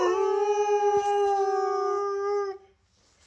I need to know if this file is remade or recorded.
recorded